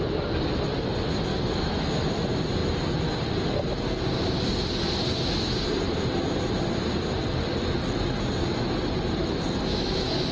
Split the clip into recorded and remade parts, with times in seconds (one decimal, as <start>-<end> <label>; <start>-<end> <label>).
0.0-1.3 recorded; 1.3-1.9 remade; 1.9-7.5 recorded; 7.5-8.2 remade; 8.2-9.2 recorded; 9.2-10.3 remade